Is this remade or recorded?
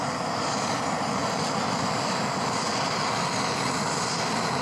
recorded